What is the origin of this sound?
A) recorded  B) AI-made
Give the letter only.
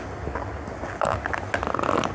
A